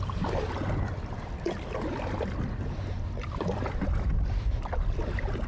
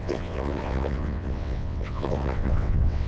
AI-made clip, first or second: second